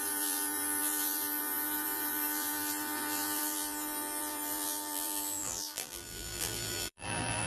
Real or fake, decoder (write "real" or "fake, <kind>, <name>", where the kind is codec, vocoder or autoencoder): fake, vocoder, BigVGAN v2